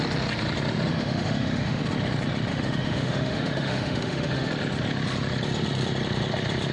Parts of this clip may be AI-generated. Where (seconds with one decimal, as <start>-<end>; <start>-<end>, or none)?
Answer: 0.9-1.8; 2.5-4.5